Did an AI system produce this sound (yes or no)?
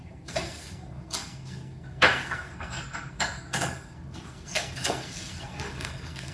yes